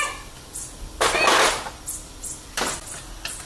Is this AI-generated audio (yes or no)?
no